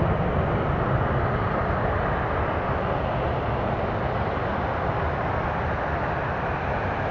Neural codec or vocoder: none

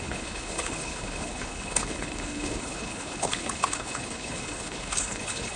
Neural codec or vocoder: codec, HILCodec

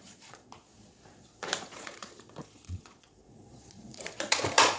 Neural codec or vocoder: vocoder, Vocos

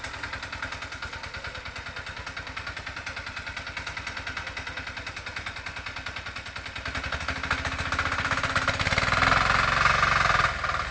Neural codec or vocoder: none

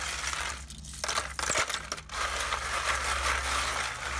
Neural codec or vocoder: none